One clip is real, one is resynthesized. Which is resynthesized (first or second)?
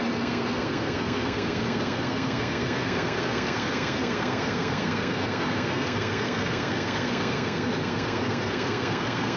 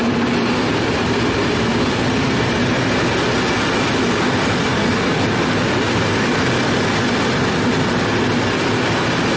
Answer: first